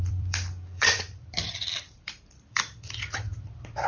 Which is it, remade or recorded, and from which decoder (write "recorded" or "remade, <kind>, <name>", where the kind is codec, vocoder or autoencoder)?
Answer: remade, vocoder, BigVGAN v2